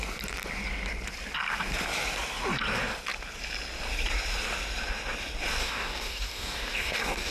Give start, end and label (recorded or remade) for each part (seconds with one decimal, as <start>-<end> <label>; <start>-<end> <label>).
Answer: 0.0-5.6 recorded; 5.6-7.3 remade